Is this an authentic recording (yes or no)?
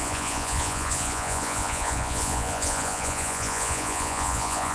no